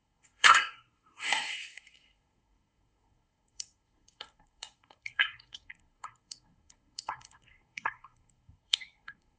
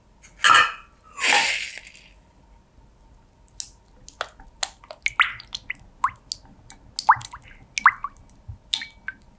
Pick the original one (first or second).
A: second